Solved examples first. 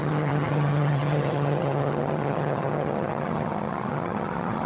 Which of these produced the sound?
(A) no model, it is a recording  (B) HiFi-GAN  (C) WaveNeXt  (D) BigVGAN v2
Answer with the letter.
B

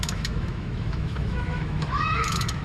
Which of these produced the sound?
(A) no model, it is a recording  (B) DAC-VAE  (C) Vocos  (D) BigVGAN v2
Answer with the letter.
B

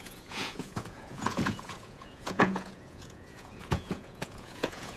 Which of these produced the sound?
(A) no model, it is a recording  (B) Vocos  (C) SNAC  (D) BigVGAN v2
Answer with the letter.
B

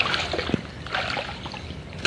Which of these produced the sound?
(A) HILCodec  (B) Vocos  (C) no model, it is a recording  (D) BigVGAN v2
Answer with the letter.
C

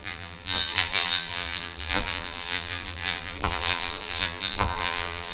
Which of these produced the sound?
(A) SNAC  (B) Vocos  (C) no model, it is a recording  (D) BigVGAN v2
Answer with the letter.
D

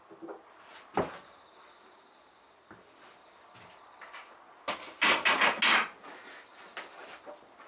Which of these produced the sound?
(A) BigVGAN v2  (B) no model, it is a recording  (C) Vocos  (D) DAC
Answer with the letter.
B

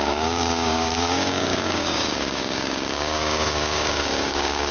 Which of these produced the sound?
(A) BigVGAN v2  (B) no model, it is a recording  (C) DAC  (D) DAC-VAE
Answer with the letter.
C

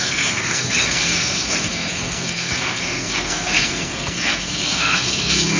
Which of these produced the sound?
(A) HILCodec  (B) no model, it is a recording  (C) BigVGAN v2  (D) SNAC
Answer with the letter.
D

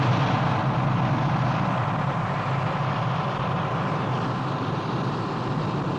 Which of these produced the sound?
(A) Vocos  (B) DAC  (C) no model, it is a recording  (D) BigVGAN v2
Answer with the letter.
C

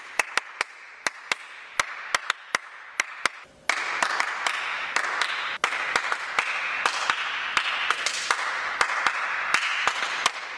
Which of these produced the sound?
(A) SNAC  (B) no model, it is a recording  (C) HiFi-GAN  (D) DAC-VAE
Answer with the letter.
B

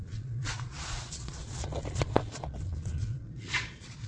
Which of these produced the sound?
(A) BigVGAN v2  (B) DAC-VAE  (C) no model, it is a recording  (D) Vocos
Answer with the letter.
D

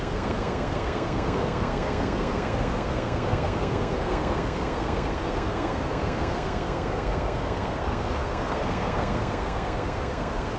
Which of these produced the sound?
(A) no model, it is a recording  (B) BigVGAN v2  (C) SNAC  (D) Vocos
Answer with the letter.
C